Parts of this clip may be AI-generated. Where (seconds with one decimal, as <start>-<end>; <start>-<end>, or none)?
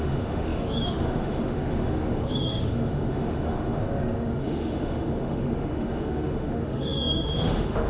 0.0-7.9